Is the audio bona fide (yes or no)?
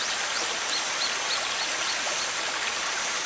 yes